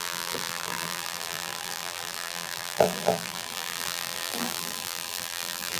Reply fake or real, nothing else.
fake